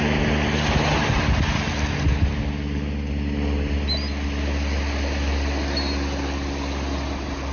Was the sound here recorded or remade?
recorded